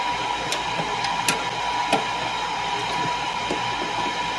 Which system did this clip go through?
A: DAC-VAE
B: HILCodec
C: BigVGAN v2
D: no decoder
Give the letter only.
D